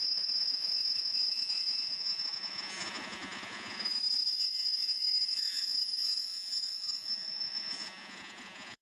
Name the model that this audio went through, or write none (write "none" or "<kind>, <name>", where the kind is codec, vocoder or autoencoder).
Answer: vocoder, Vocos